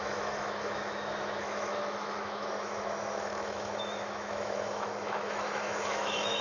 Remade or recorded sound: remade